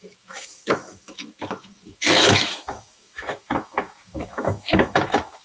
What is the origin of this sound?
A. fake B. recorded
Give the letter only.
A